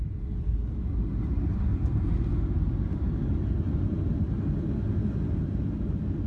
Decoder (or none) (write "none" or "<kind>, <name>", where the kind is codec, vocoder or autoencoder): none